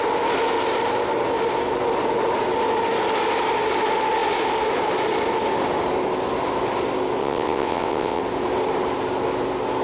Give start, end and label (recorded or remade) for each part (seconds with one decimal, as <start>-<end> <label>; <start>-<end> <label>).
0.0-7.2 recorded; 7.2-8.2 remade; 8.2-9.8 recorded